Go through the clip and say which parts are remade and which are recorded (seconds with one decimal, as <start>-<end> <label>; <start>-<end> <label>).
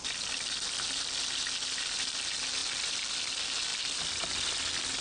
0.0-5.0 recorded